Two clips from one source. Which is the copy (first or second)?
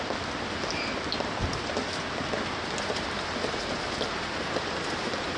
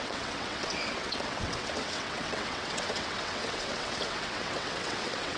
second